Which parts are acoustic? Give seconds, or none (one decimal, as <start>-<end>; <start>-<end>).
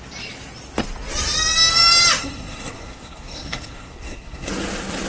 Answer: 0.0-2.2; 4.5-5.1